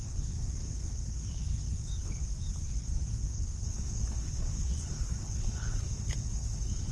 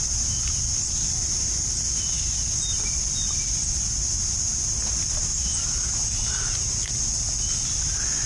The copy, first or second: first